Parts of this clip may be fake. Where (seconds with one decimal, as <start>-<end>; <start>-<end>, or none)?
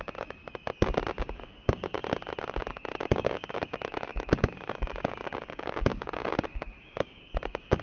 0.0-0.4; 1.2-2.0; 2.5-7.8